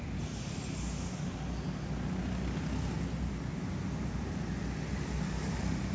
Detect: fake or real real